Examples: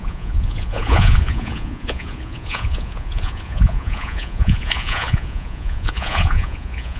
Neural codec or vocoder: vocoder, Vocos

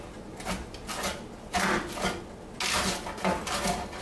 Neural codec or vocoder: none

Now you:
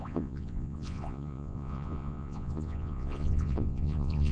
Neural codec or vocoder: vocoder, Vocos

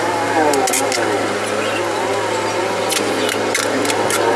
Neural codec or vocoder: none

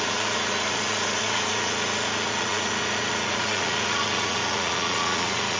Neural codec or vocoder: vocoder, Vocos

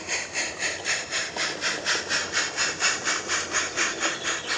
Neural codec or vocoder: none